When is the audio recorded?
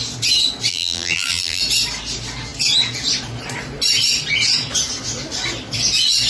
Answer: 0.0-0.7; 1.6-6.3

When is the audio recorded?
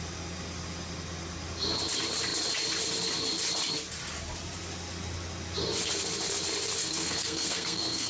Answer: 0.0-6.8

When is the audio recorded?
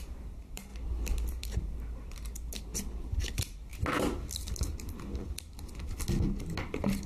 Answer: 0.7-1.3; 2.7-3.3; 3.7-6.6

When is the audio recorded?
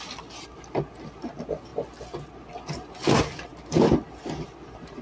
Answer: 0.0-5.0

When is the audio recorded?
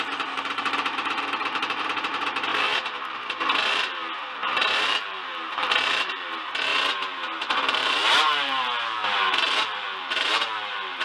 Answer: 2.5-3.6; 6.7-7.5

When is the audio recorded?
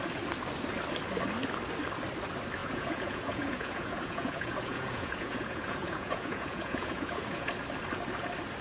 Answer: 0.0-2.6; 7.5-8.6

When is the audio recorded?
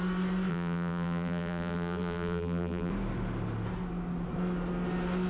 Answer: 0.0-0.5; 2.9-5.3